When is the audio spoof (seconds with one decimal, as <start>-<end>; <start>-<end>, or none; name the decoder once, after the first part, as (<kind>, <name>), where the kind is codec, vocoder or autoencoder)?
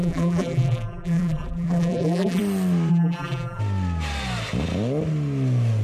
0.0-2.4 (vocoder, BigVGAN v2); 2.9-3.6